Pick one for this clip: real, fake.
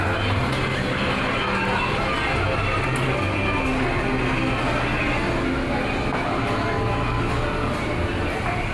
real